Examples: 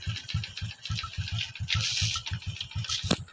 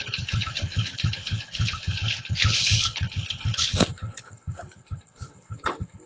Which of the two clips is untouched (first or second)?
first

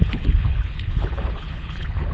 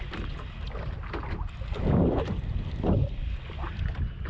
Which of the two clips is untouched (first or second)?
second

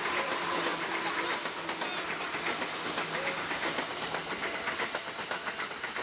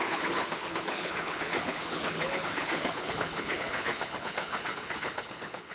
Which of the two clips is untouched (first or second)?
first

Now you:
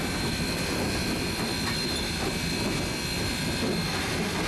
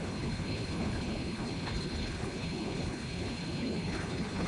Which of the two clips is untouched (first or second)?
first